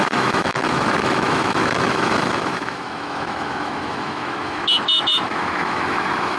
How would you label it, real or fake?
fake